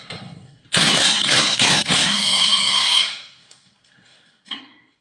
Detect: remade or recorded remade